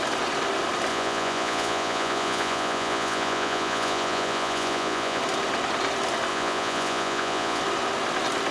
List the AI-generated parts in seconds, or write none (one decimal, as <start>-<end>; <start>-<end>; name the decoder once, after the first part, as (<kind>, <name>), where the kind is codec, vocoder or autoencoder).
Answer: 0.9-5.2 (vocoder, Vocos); 6.3-7.6